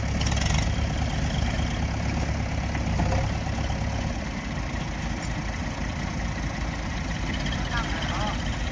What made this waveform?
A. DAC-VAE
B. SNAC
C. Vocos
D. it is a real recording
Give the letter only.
D